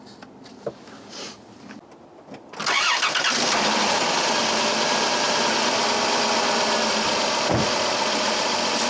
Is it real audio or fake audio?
real